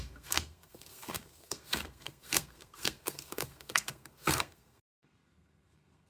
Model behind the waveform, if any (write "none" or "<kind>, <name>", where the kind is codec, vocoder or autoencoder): codec, SNAC